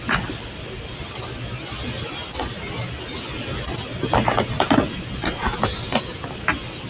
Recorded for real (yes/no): yes